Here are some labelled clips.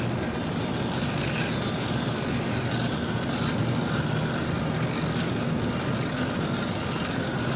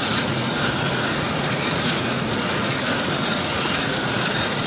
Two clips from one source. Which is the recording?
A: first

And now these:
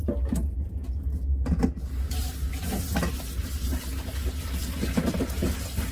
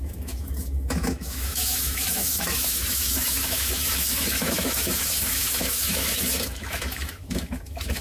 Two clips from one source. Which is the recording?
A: first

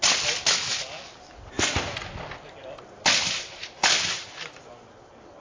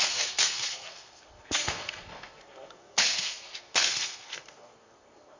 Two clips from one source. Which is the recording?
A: first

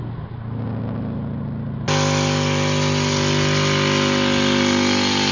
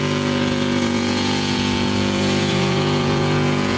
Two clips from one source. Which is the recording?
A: first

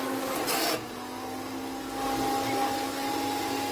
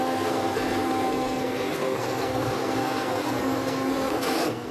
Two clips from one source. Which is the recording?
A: first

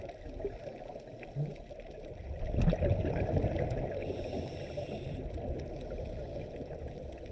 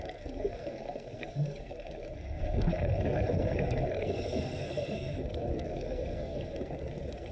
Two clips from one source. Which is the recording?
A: first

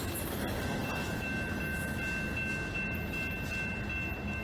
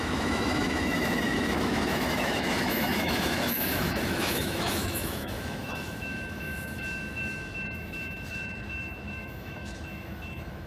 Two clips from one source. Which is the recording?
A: first